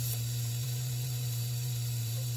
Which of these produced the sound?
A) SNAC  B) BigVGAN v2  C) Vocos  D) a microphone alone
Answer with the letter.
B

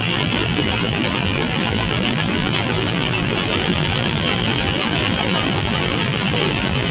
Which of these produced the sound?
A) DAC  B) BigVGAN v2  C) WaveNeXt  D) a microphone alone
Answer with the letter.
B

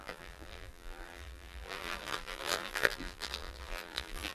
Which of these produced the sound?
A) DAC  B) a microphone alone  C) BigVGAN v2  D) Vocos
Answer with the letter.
C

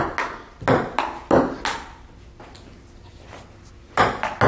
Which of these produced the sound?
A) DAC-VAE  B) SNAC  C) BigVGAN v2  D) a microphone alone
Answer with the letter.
D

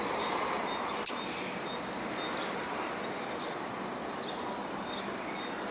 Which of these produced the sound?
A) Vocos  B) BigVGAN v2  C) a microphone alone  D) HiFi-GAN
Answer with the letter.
B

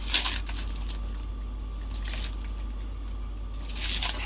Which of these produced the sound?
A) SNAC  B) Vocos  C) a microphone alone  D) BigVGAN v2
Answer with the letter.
C